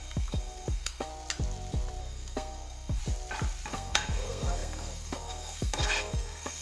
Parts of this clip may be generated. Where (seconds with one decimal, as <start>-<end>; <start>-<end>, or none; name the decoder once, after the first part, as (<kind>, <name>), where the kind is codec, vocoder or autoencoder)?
0.0-1.1 (codec, SNAC); 2.0-3.0; 3.7-6.6